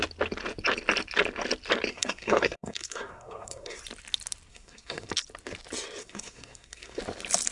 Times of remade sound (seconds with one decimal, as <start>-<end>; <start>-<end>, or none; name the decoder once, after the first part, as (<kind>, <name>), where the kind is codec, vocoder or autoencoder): 1.9-3.8 (codec, SNAC); 4.5-5.1; 6.0-7.0